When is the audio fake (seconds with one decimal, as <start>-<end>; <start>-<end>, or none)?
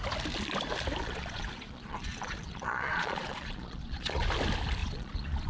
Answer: 1.0-4.3; 4.8-5.5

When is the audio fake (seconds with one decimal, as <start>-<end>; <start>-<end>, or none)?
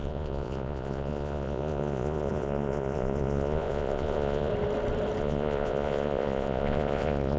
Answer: 0.0-4.5; 5.2-7.4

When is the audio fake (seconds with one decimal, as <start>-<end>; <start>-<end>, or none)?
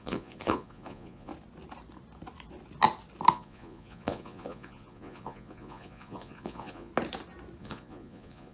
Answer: 0.0-1.3; 3.3-6.9; 7.6-8.5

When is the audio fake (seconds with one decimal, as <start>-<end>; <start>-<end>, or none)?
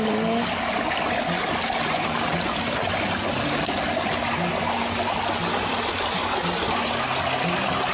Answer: none